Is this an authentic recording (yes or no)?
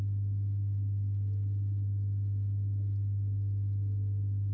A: yes